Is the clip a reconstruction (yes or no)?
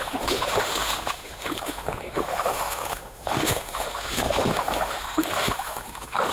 yes